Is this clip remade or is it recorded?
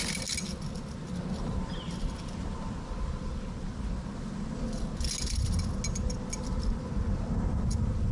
recorded